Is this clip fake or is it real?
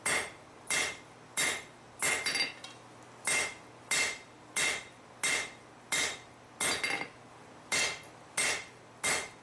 real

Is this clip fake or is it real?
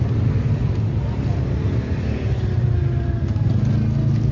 real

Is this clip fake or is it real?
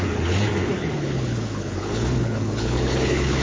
fake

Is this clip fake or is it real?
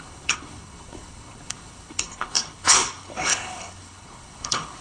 fake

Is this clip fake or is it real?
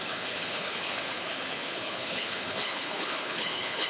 fake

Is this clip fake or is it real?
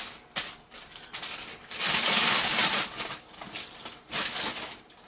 real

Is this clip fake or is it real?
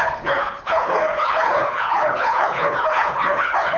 fake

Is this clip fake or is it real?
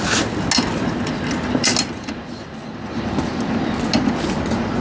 real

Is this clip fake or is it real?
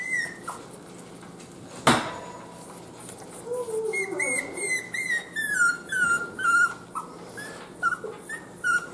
real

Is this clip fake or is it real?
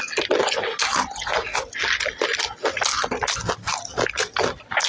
real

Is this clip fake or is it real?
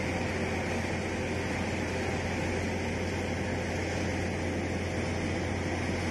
real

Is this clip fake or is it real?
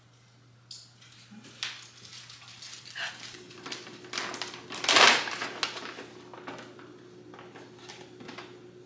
real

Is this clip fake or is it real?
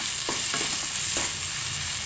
real